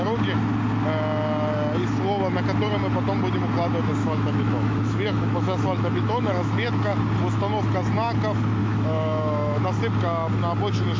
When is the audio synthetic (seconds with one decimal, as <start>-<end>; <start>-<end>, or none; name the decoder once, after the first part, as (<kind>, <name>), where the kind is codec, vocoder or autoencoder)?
4.0-7.0 (autoencoder, DAC-VAE); 8.6-9.6